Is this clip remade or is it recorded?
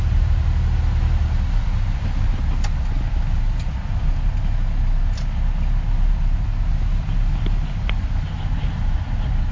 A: recorded